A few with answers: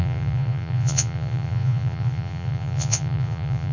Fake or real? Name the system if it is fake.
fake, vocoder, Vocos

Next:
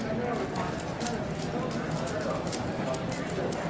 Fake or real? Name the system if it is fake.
real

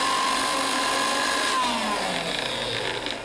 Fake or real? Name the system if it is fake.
real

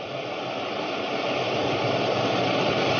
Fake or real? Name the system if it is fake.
fake, vocoder, BigVGAN v2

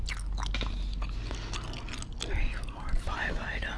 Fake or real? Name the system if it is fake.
real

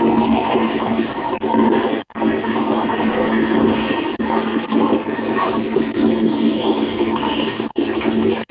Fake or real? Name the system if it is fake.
fake, codec, SNAC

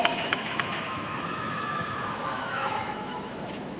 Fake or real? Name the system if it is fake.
fake, autoencoder, DAC-VAE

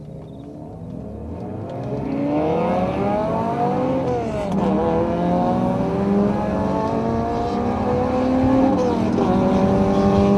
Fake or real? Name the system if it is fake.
real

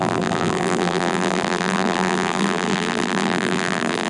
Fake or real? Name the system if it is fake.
fake, vocoder, BigVGAN v2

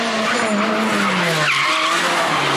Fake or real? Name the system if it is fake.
real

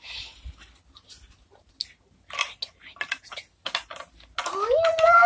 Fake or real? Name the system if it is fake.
real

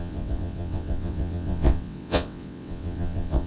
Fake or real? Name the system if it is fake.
fake, vocoder, WaveNeXt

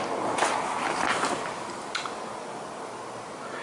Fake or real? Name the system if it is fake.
real